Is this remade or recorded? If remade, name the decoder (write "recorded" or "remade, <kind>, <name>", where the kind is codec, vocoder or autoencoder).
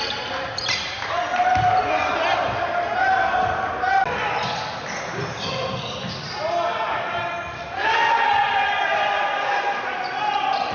recorded